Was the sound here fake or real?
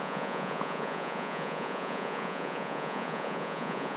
fake